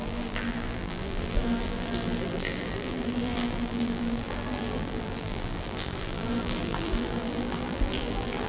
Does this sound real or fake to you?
fake